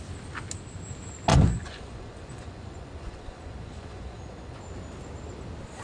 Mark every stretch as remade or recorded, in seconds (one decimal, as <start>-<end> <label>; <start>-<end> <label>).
0.0-1.3 recorded; 1.3-4.6 remade; 4.6-5.8 recorded